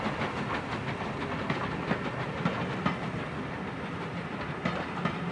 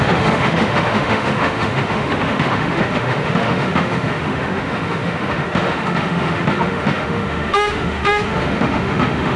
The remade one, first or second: second